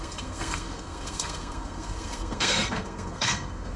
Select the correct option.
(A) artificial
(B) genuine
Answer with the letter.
A